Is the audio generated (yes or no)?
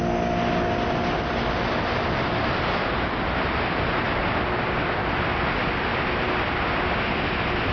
no